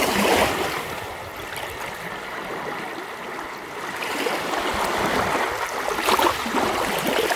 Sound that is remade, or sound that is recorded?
recorded